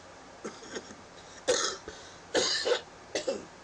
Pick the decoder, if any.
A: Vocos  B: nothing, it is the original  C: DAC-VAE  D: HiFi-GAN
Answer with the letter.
B